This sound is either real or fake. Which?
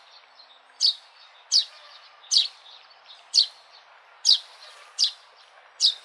real